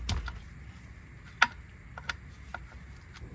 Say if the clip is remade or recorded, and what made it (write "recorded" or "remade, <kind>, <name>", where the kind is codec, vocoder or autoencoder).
recorded